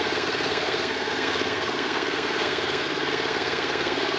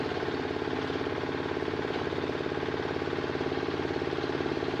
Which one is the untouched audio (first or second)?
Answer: second